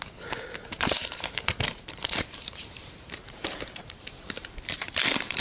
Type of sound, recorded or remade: remade